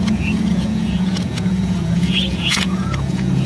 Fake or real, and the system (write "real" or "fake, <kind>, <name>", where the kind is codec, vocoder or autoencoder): fake, vocoder, Vocos